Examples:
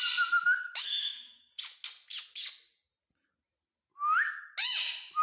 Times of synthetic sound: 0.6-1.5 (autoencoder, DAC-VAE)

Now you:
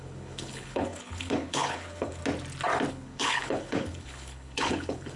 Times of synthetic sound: 0.0-2.2 (codec, HILCodec); 2.9-5.2

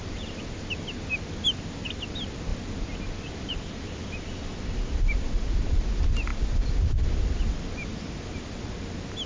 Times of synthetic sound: none

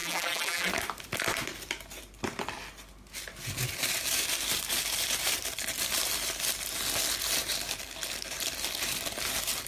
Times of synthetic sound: 0.0-0.7 (vocoder, BigVGAN v2)

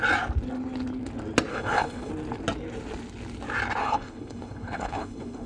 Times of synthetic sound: 1.5-2.1 (codec, HILCodec); 3.8-5.5

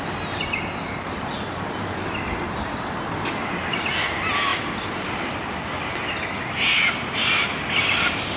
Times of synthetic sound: none

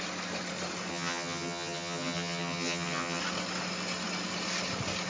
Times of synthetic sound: 0.9-3.2 (vocoder, HiFi-GAN)

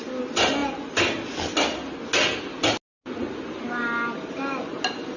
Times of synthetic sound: none